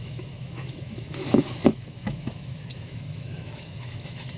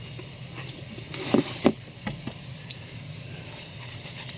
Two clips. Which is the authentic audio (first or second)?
second